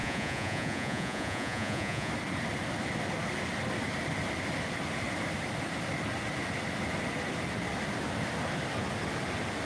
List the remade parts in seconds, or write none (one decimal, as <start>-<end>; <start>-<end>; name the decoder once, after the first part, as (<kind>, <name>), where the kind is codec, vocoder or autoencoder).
0.0-2.1 (vocoder, Vocos)